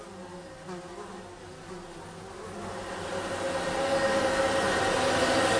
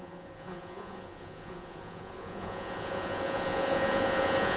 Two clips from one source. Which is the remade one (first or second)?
second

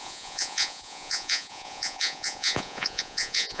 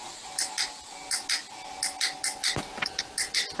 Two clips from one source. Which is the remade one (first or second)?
first